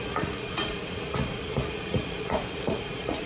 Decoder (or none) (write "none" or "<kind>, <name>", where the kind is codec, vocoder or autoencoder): vocoder, Vocos